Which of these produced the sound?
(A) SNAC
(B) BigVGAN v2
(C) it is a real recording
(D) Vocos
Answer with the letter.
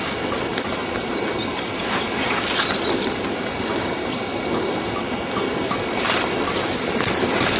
C